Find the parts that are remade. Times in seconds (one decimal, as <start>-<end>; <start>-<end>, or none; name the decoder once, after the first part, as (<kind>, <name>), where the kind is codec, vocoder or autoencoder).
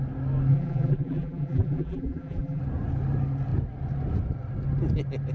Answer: 0.5-2.6 (vocoder, BigVGAN v2)